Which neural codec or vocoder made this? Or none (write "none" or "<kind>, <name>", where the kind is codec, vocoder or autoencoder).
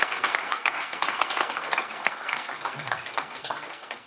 codec, SNAC